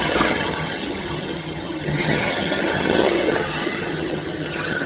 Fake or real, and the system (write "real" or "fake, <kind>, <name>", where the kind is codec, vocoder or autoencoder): fake, vocoder, HiFi-GAN